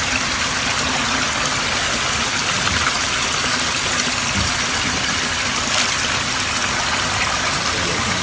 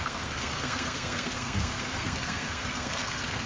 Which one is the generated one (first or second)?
second